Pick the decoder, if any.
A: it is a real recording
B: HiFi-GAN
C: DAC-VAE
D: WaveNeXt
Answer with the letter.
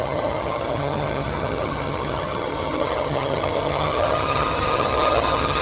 B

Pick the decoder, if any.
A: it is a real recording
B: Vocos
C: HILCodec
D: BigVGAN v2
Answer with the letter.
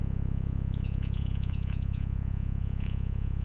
B